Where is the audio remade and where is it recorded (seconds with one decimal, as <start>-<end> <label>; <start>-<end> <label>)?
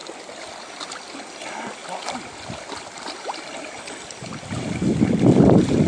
0.0-5.9 recorded